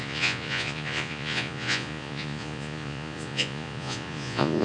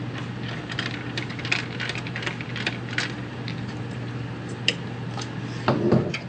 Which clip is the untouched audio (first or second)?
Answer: second